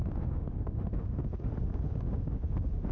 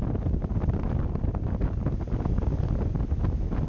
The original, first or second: second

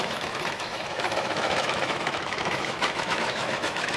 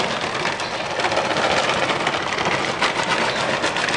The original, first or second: second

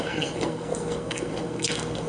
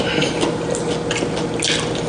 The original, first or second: second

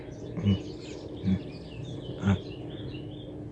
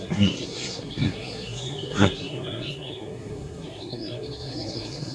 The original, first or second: first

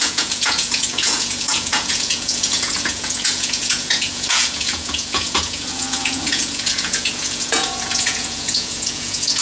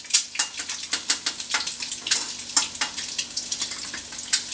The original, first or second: second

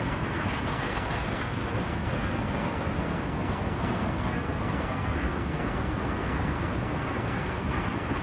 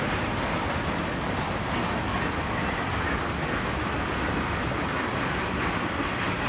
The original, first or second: second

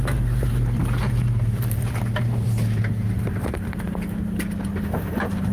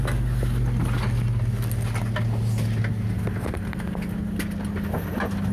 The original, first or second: second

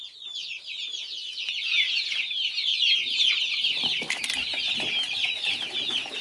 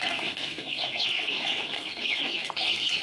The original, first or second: first